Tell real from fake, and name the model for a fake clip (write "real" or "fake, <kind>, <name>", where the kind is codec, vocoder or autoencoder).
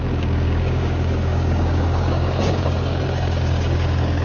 fake, codec, DAC